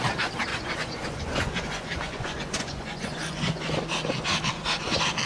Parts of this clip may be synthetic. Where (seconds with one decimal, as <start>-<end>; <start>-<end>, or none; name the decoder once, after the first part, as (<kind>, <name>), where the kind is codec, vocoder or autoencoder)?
0.5-3.7 (vocoder, Vocos)